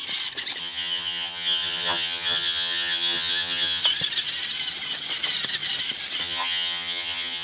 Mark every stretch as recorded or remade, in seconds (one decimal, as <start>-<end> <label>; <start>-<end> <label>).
0.0-0.6 recorded; 0.6-3.8 remade; 3.8-6.2 recorded; 6.2-7.4 remade